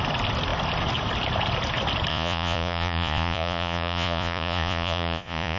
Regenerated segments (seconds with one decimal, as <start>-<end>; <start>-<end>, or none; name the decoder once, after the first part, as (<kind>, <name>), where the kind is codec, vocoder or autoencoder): 2.1-5.6 (vocoder, Vocos)